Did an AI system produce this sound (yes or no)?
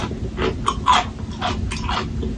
no